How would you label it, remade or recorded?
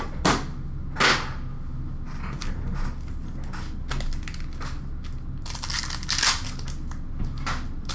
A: recorded